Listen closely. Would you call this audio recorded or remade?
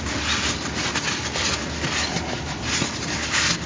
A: recorded